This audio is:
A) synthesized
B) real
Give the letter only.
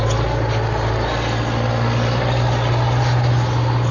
B